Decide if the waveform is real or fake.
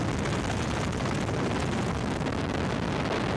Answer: real